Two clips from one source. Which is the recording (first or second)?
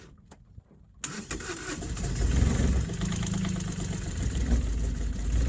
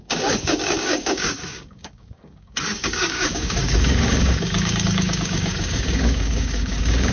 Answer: first